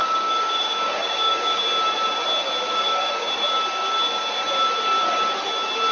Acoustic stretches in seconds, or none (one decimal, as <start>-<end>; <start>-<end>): 1.6-2.7; 3.3-5.9